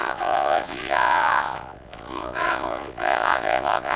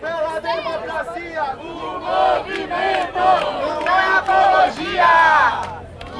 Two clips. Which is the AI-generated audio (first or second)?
first